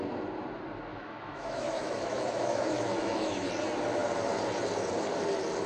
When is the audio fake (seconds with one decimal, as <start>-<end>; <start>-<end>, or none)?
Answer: 0.9-3.5